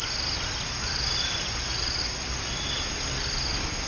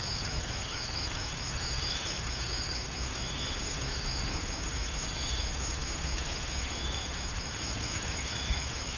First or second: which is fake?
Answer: second